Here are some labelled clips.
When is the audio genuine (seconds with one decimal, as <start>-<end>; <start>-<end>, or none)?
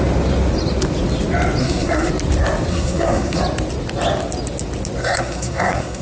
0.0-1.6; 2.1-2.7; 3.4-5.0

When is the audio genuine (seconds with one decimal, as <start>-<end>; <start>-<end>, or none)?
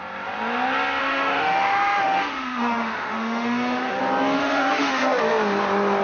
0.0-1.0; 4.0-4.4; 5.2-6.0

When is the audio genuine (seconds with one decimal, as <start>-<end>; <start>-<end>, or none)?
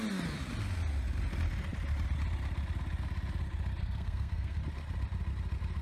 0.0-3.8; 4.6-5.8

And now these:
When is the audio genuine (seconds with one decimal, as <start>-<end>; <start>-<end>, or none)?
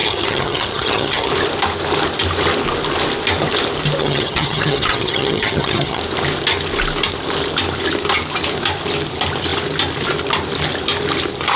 1.3-4.0; 6.0-11.6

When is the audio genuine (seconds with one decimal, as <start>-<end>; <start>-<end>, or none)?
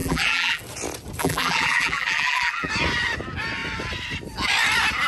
0.6-1.2; 2.7-5.1